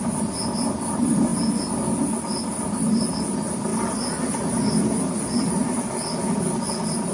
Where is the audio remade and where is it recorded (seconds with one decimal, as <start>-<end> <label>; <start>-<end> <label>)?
0.0-7.1 recorded